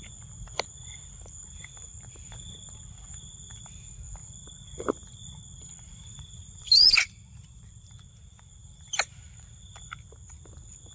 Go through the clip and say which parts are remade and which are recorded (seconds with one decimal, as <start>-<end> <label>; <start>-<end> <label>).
0.0-4.2 recorded; 4.2-7.9 remade; 7.9-8.6 recorded; 8.6-9.2 remade; 9.2-10.9 recorded